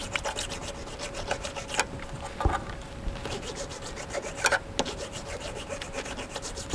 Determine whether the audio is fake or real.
real